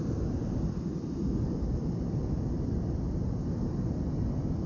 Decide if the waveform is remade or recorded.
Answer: recorded